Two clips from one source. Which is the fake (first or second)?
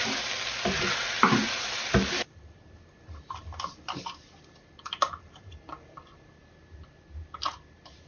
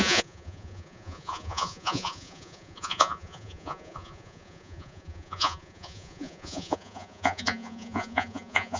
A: second